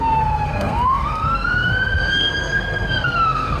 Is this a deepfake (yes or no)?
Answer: yes